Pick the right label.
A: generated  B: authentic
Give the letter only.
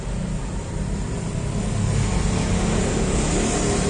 B